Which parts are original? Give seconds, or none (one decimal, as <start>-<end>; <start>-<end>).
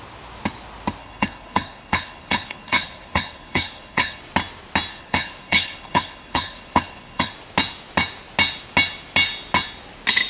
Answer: 0.0-1.0; 4.2-4.9; 7.3-10.3